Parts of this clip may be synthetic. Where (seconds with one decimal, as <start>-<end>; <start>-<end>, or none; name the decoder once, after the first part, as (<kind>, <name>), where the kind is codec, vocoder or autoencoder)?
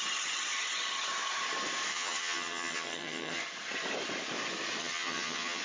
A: 1.9-3.4 (vocoder, HiFi-GAN); 4.8-5.6